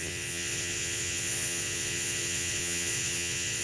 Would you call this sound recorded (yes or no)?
no